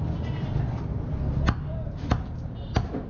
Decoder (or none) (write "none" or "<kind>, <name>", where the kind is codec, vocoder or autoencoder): none